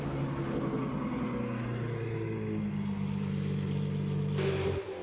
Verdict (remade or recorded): recorded